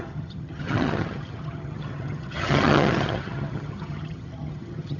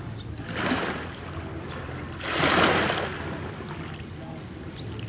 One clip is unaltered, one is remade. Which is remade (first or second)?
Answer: first